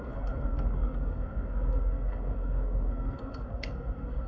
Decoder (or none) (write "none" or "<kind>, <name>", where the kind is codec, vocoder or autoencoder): codec, SNAC